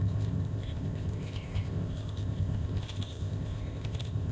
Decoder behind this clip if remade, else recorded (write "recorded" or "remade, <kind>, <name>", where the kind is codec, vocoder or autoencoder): remade, codec, ZipCodec